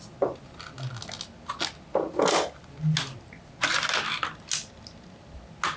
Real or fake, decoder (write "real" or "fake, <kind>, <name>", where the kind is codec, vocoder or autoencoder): real